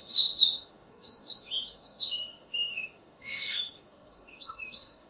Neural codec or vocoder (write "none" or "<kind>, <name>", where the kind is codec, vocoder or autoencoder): autoencoder, DAC-VAE